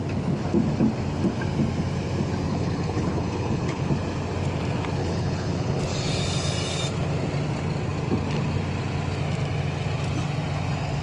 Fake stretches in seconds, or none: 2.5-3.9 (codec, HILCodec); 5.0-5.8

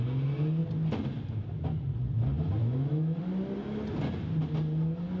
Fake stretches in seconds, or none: 2.6-3.2 (autoencoder, DAC-VAE)

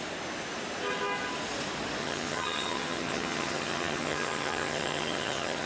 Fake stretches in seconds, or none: 2.0-5.7 (vocoder, HiFi-GAN)